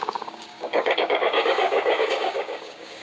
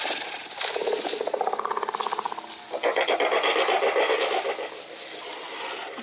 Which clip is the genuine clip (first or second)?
second